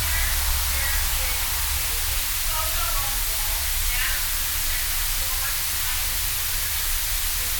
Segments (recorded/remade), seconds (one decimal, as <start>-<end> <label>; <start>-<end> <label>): 0.0-1.0 remade; 1.0-7.6 recorded